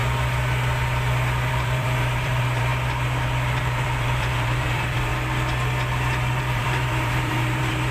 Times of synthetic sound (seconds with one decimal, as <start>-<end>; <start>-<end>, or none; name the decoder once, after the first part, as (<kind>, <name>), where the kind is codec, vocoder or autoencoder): 1.5-2.7 (vocoder, BigVGAN v2); 3.6-5.1; 6.4-7.9